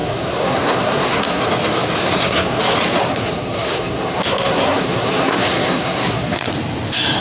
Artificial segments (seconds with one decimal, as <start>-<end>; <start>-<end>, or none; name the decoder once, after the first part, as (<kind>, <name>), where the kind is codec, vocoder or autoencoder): 0.0-1.4 (codec, SNAC); 2.0-2.6; 3.1-6.5